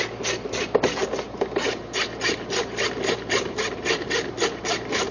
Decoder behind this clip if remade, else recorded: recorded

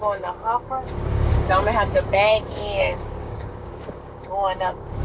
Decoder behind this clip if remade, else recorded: remade, codec, DAC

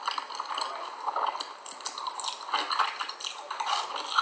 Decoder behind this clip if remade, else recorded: recorded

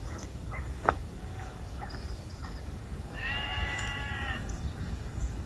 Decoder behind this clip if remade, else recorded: remade, codec, DAC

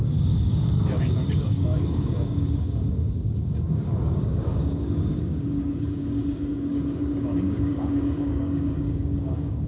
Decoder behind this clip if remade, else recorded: remade, codec, DAC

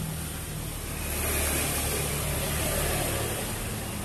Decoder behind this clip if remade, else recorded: recorded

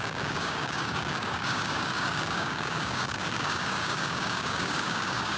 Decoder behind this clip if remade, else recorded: remade, codec, DAC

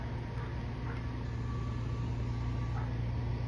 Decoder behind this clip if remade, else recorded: recorded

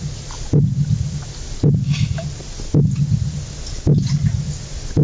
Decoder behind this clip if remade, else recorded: recorded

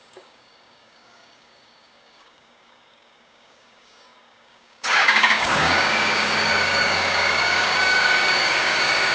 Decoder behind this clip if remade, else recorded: remade, codec, DAC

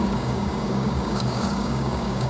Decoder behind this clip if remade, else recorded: remade, codec, DAC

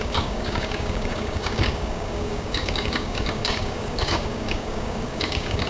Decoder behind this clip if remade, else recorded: remade, codec, DAC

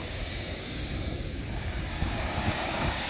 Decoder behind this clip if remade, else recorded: remade, codec, DAC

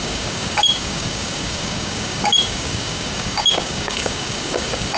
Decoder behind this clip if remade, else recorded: remade, codec, DAC